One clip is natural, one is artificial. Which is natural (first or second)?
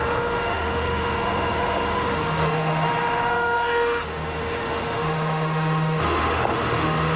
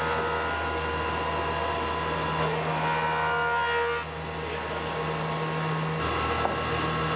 second